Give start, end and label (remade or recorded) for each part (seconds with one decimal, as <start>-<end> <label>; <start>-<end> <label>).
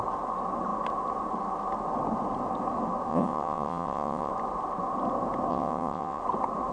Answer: 0.0-3.1 recorded; 3.1-4.3 remade; 4.3-5.5 recorded; 5.5-6.2 remade; 6.2-6.7 recorded